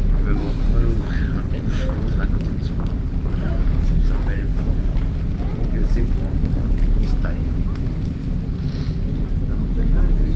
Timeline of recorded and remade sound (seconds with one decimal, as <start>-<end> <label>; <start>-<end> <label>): 0.0-10.4 recorded